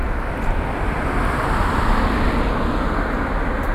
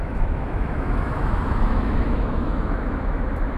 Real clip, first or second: first